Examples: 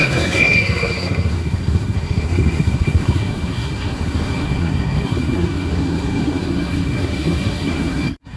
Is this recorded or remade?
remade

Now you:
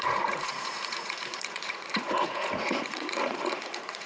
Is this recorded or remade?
remade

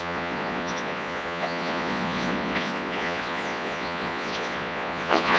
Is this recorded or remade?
remade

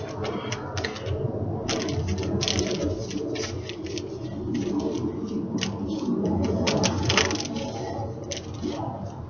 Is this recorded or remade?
recorded